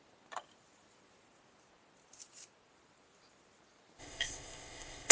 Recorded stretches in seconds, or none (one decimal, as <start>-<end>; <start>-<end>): 0.0-4.0